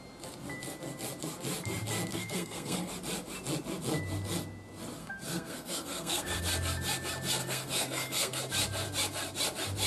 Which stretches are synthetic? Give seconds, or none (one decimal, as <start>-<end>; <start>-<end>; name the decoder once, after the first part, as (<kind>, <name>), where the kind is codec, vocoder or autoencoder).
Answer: 2.1-2.9 (codec, SNAC); 5.0-6.4; 7.4-8.4